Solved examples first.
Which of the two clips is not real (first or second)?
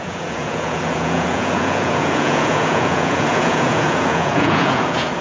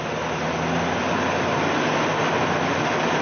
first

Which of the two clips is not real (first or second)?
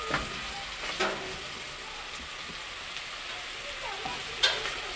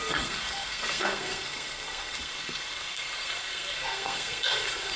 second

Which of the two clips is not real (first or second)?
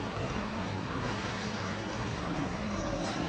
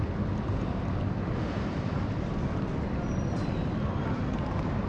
first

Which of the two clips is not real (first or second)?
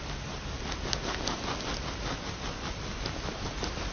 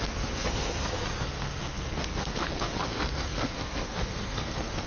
second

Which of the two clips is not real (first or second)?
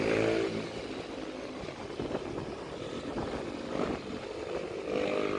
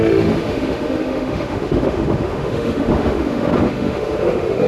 second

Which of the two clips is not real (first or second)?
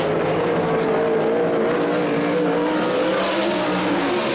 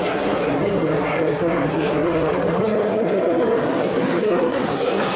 second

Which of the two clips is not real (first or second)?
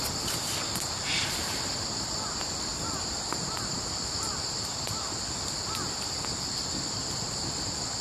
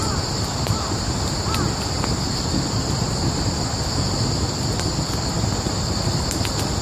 first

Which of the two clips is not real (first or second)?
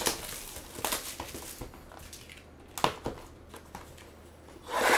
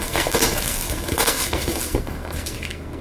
second